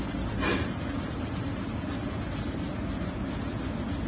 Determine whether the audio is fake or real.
real